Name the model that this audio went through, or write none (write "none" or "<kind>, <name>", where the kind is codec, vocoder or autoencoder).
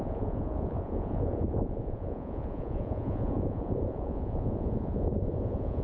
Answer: vocoder, Vocos